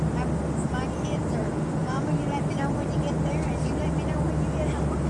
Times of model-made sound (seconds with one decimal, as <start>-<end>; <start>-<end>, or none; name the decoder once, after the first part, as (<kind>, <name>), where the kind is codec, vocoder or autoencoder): none